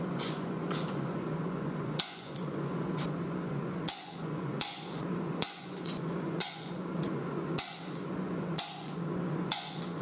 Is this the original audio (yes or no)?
no